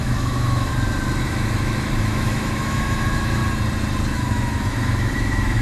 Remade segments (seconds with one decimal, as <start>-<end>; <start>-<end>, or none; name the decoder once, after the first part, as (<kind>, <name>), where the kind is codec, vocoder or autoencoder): 0.0-0.7 (autoencoder, DAC-VAE); 1.2-3.4; 4.1-5.6